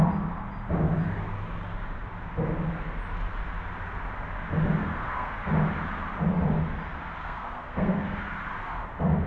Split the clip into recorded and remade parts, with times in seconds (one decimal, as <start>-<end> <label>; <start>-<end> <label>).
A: 0.0-4.8 recorded; 4.8-5.5 remade; 5.5-7.2 recorded; 7.2-8.2 remade; 8.2-9.3 recorded